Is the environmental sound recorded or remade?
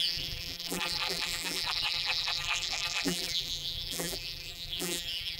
remade